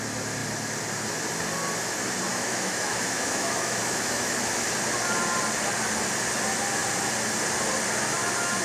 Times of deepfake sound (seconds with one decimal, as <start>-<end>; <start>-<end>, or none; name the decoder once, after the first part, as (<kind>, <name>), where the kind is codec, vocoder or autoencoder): 2.3-4.7 (autoencoder, DAC-VAE)